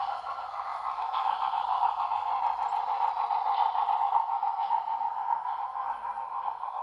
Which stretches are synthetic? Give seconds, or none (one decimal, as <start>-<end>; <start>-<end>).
0.0-2.3; 4.0-6.8